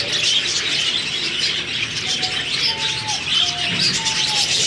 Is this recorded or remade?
recorded